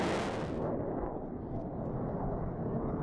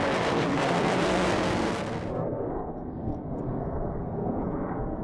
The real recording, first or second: first